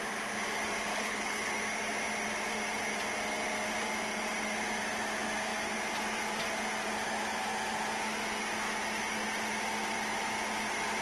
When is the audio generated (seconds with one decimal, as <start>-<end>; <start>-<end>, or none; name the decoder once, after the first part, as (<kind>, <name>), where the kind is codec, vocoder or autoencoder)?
0.9-1.5 (codec, HILCodec)